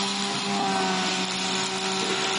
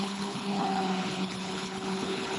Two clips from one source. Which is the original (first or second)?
first